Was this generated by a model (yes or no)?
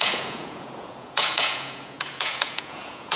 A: yes